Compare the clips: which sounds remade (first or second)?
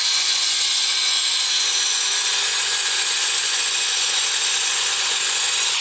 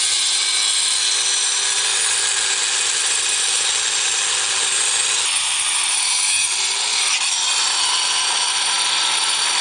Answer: first